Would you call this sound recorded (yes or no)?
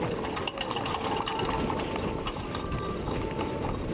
yes